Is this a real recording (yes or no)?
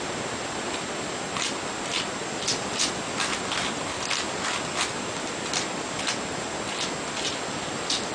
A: yes